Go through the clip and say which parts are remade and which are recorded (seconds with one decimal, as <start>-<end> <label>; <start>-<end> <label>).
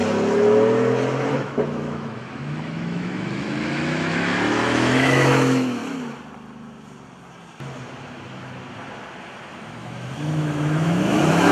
0.0-1.3 recorded; 1.3-5.8 remade; 5.8-9.8 recorded; 9.8-11.5 remade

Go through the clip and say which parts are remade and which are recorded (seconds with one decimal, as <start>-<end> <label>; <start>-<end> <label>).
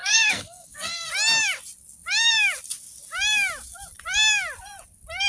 0.0-1.1 remade; 1.1-5.3 recorded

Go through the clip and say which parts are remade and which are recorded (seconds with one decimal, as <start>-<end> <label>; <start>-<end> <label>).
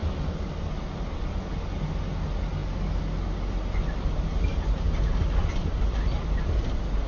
0.0-7.1 recorded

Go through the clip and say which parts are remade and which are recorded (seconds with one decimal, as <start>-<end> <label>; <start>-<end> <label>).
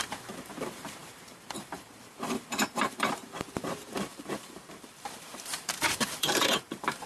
0.0-7.1 remade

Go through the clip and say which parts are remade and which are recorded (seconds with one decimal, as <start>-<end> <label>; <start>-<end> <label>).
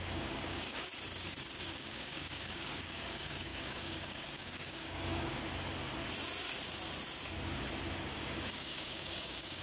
0.0-0.9 remade; 0.9-1.6 recorded; 1.6-5.3 remade; 5.3-8.1 recorded; 8.1-9.6 remade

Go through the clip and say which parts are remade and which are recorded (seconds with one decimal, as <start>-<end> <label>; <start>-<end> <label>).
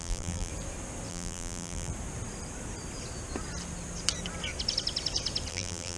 0.0-0.5 remade; 0.5-1.1 recorded; 1.1-1.9 remade; 1.9-5.5 recorded; 5.5-6.0 remade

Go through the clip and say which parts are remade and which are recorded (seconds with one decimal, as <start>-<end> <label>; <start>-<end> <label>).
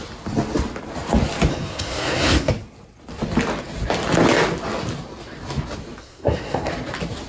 0.0-1.5 recorded; 1.5-2.5 remade; 2.5-6.0 recorded; 6.0-6.7 remade; 6.7-7.3 recorded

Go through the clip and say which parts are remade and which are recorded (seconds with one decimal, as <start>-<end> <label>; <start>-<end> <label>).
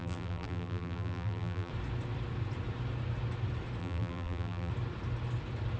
0.0-1.7 remade; 1.7-3.8 recorded; 3.8-4.7 remade; 4.7-5.8 recorded